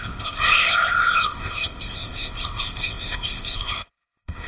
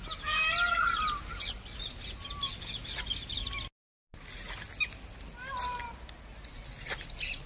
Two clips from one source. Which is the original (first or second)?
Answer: second